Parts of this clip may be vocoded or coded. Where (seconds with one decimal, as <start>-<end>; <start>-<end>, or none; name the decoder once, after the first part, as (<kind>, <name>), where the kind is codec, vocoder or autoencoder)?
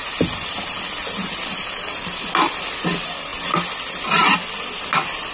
none